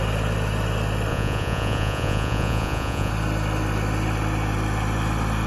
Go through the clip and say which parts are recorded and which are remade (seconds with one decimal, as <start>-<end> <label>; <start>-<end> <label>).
0.0-1.1 recorded; 1.1-3.1 remade; 3.1-5.5 recorded

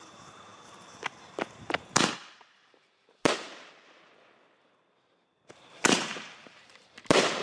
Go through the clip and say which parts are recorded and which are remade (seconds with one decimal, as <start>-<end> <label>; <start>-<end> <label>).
0.0-7.4 remade

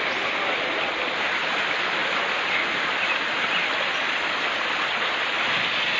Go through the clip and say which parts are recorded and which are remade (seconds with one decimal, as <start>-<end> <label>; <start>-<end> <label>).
0.0-6.0 recorded

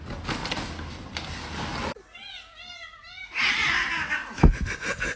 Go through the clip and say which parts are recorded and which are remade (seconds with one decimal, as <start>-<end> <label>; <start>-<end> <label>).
0.0-5.2 recorded